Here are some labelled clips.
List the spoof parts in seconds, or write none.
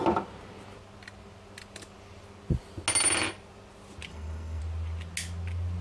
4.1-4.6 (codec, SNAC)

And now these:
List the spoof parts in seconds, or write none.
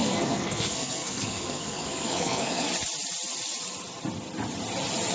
0.0-2.7 (codec, SNAC)